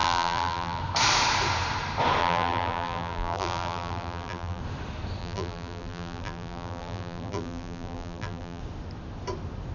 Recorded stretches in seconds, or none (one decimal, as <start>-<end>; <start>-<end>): 0.8-2.2; 4.6-5.2; 8.6-9.7